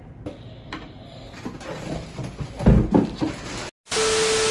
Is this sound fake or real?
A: real